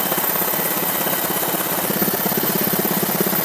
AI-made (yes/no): no